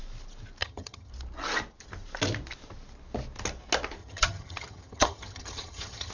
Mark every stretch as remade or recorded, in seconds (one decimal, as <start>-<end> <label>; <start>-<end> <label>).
0.0-0.6 recorded; 0.6-1.1 remade; 1.1-4.0 recorded; 4.0-6.1 remade